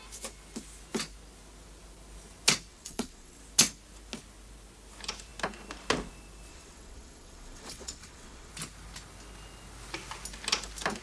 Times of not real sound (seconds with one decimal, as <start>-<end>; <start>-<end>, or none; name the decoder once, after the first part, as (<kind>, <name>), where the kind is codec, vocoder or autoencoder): 2.7-3.4 (vocoder, WaveNeXt); 6.5-8.5